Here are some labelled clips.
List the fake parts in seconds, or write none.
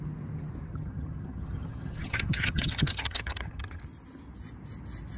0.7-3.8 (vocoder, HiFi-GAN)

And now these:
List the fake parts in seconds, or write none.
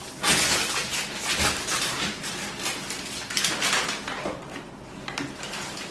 none